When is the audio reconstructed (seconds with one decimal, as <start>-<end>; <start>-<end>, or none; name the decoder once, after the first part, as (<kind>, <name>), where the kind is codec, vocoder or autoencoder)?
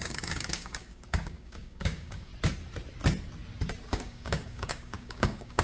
0.0-2.3 (codec, DAC); 3.9-5.6